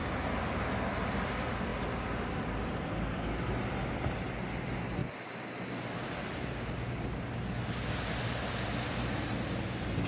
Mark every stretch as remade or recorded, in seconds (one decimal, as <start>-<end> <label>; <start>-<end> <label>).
0.0-0.7 remade; 0.7-10.1 recorded